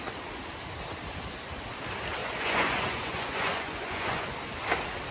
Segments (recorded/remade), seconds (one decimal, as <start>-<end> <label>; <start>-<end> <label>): 0.0-2.2 recorded; 2.2-4.3 remade; 4.3-5.1 recorded